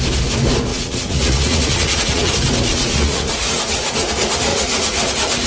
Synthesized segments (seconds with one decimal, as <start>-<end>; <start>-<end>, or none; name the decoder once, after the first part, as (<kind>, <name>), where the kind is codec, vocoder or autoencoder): 0.7-2.3 (vocoder, Vocos); 2.7-4.1; 4.5-5.1